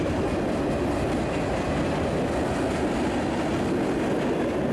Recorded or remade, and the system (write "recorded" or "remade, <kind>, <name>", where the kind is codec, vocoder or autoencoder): recorded